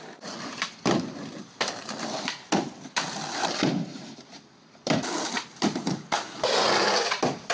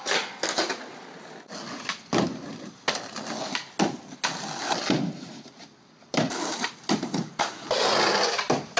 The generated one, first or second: first